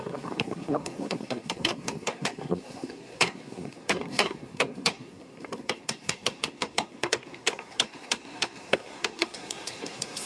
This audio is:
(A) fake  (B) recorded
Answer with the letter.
A